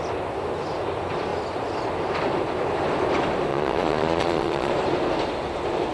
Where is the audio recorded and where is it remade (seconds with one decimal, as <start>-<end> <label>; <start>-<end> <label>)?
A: 0.0-3.5 recorded; 3.5-4.7 remade; 4.7-5.9 recorded